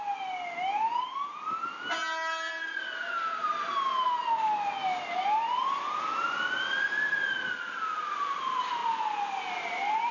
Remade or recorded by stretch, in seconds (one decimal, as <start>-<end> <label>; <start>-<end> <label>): 0.0-10.1 recorded